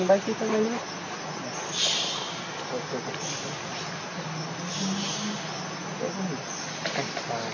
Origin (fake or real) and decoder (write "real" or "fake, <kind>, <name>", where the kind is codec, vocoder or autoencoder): real